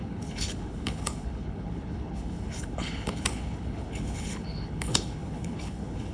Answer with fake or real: fake